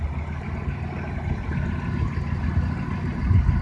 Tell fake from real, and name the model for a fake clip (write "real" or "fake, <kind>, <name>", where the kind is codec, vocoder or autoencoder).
real